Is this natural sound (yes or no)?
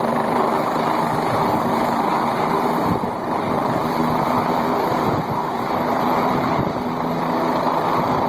no